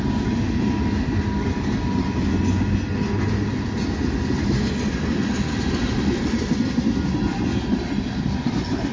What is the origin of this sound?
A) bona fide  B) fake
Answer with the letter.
A